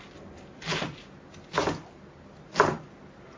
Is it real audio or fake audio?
real